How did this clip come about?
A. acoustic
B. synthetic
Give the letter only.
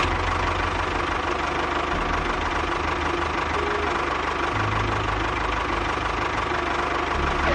A